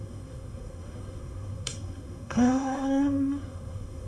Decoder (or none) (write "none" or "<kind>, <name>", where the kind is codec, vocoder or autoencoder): codec, SNAC